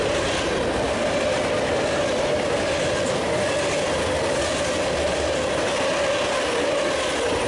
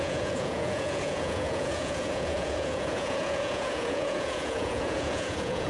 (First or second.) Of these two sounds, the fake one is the second